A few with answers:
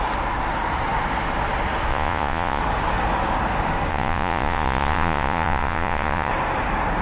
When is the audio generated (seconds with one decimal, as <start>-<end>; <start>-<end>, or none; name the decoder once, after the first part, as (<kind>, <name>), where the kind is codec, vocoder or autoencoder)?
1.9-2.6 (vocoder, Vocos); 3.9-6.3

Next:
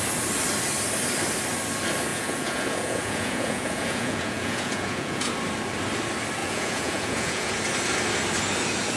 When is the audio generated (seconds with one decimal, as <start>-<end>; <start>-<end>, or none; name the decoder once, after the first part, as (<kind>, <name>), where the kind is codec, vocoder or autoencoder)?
2.1-5.3 (vocoder, Vocos); 6.4-7.5

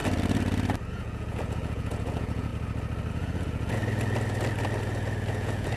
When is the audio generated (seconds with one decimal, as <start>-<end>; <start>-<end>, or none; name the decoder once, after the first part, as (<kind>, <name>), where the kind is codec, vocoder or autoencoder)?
0.9-2.5 (vocoder, Vocos); 3.1-3.8; 5.3-5.8

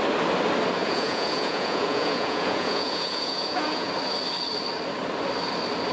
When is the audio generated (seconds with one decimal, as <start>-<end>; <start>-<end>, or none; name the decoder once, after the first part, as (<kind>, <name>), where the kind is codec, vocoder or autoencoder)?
0.8-3.9 (vocoder, Vocos)